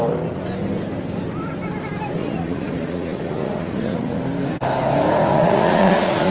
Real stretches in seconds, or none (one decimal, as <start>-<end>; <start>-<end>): 0.0-2.2; 4.2-5.3